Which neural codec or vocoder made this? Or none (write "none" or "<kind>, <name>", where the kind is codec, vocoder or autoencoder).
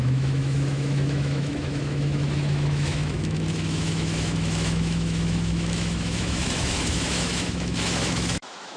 autoencoder, DAC-VAE